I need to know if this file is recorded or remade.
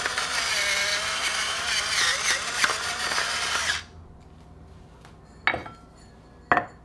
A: recorded